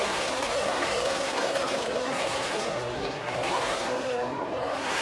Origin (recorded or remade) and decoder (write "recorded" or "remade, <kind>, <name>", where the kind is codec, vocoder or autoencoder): remade, codec, SNAC